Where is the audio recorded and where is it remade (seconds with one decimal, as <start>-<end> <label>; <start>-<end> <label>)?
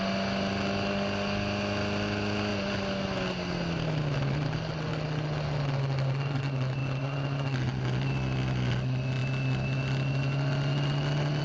0.0-11.4 recorded